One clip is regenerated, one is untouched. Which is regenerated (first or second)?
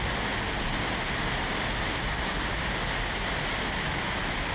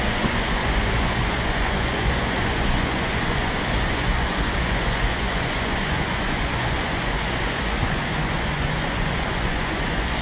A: second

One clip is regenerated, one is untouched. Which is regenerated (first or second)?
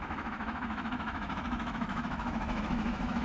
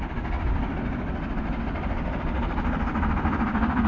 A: first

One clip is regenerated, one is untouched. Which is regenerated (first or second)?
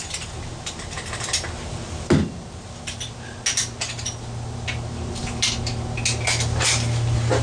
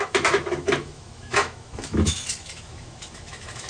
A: second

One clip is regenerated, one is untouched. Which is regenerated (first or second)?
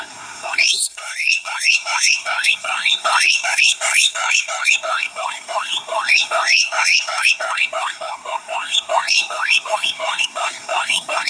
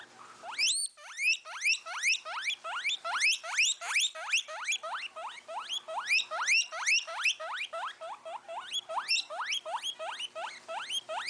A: first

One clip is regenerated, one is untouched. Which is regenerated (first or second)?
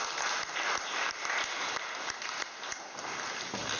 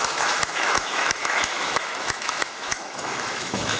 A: second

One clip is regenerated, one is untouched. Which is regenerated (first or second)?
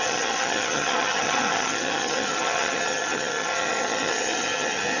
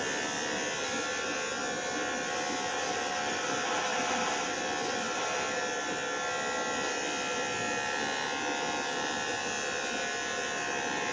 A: first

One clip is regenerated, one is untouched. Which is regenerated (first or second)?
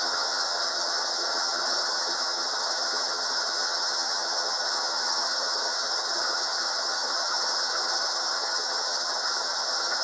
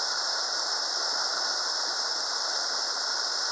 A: first